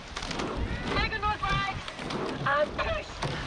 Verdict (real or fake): real